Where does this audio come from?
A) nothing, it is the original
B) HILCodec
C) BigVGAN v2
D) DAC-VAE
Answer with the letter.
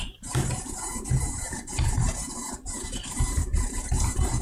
C